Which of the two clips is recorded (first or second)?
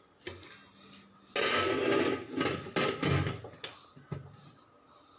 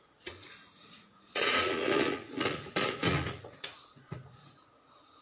first